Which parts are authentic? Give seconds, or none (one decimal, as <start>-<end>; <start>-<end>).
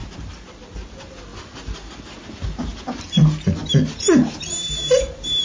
0.0-5.4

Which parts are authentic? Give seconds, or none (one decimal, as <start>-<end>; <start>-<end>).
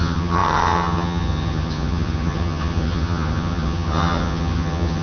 none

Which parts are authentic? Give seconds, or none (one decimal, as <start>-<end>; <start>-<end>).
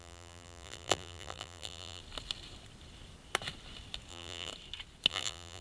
2.0-4.1; 4.5-5.1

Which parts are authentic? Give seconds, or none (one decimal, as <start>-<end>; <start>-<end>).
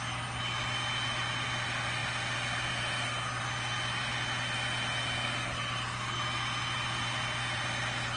0.0-8.2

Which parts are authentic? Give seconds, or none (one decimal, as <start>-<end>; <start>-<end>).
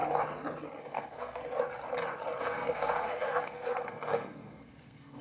0.0-0.8; 1.4-2.4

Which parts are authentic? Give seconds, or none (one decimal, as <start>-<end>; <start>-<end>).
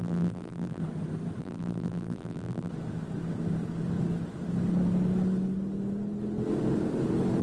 0.8-1.4; 2.7-7.4